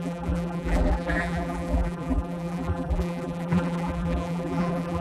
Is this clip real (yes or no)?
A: no